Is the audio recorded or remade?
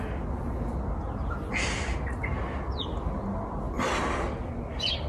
recorded